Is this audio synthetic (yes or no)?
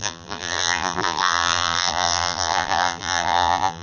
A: yes